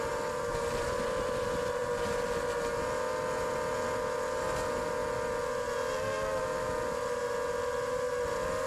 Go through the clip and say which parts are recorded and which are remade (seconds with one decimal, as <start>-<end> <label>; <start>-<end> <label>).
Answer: 0.0-8.7 recorded